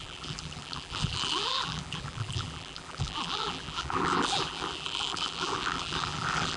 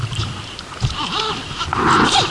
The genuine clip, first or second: second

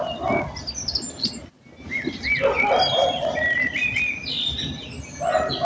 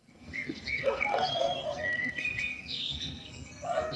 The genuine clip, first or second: first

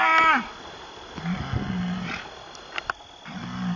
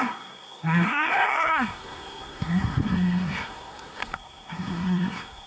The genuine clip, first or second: first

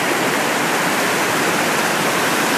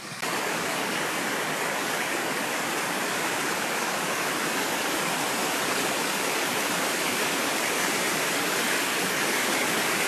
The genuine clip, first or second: first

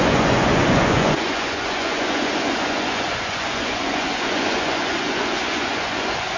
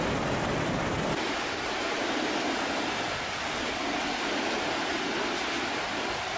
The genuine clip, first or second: second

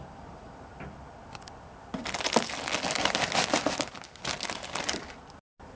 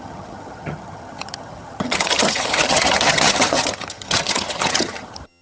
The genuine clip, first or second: first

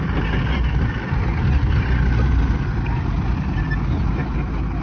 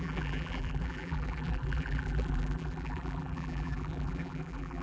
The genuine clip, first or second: first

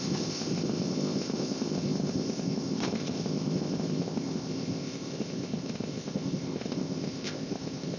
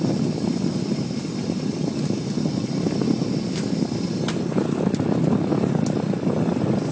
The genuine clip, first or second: second